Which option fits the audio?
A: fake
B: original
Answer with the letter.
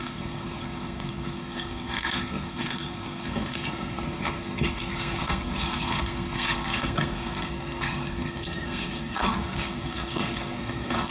A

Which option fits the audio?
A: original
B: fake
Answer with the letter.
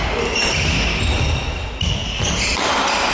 A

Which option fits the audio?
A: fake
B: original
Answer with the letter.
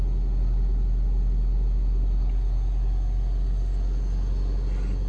B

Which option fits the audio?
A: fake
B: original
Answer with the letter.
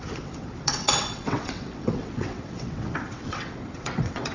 A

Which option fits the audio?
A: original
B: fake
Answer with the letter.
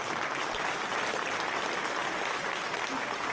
A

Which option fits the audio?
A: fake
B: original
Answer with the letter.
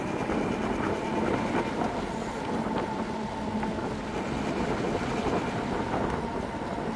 B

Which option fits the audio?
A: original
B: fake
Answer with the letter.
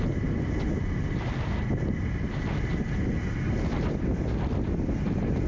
A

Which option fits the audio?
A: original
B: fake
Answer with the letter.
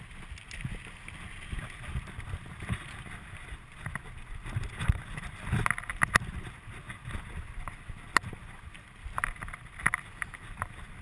A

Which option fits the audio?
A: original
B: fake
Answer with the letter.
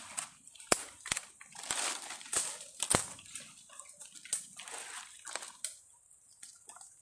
A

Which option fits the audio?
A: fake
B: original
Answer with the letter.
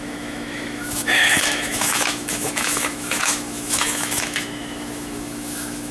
A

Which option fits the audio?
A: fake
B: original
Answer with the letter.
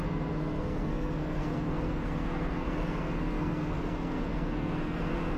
A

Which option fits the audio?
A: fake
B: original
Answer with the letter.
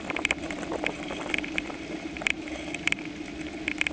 A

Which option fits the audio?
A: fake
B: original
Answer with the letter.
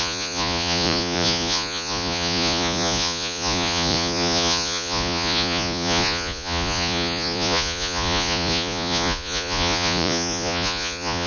A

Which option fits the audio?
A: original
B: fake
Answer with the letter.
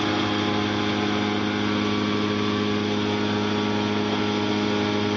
A